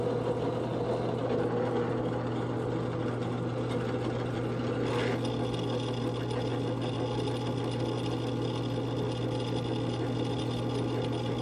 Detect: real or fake real